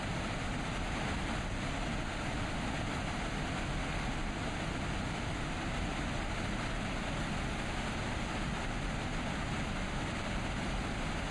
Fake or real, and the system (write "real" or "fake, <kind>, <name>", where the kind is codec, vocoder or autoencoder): real